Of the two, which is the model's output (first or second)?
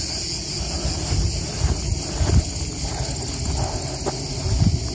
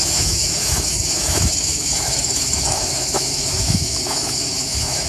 second